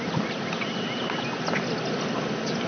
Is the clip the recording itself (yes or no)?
yes